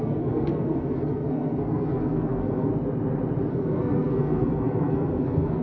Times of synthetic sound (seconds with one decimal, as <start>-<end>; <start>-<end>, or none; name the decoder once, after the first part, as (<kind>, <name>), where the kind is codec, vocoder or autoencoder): 0.0-2.7 (codec, SNAC); 3.5-5.6